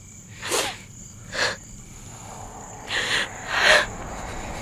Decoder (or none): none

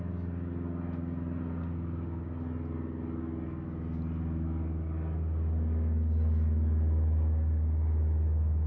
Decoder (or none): none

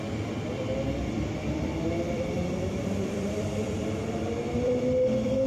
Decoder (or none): vocoder, BigVGAN v2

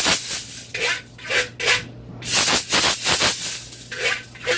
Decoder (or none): none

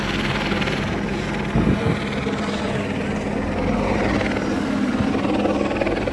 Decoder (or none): none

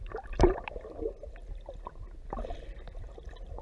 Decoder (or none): none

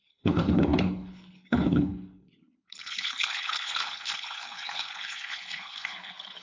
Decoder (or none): codec, HILCodec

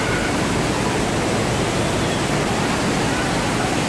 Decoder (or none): none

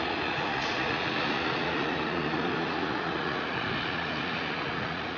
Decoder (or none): vocoder, Vocos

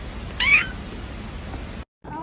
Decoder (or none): none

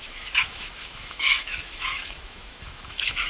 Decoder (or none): autoencoder, DAC-VAE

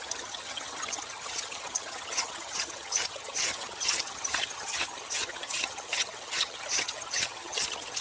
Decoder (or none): vocoder, HiFi-GAN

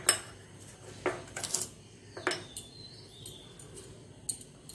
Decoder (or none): none